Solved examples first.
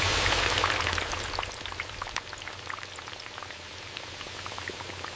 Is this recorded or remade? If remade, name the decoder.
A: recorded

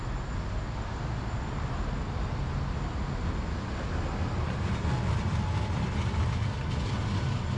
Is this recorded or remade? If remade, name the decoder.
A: recorded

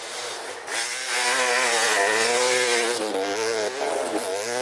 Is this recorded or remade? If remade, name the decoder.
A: recorded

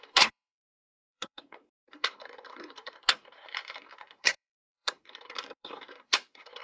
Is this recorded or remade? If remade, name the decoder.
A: remade, codec, SNAC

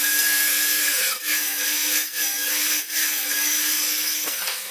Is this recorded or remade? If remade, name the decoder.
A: remade, codec, SNAC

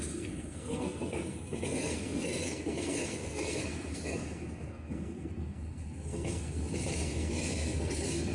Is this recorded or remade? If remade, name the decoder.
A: remade, codec, SNAC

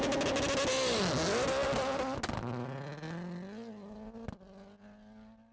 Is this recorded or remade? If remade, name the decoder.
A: recorded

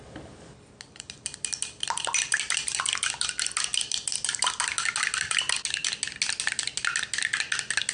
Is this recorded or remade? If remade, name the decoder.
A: recorded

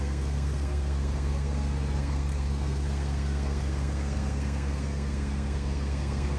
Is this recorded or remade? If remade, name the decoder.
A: remade, codec, SNAC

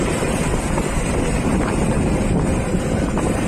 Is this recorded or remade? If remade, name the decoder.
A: recorded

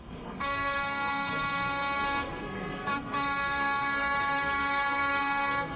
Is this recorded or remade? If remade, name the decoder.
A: remade, codec, SNAC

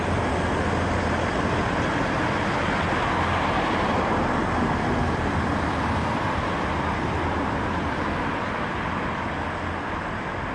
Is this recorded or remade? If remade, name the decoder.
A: recorded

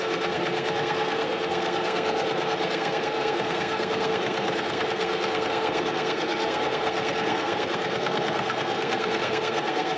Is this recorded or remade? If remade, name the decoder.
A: remade, codec, SNAC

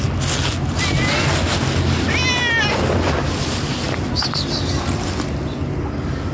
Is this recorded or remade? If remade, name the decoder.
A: recorded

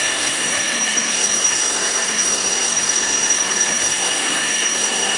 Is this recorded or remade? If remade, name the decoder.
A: remade, codec, SNAC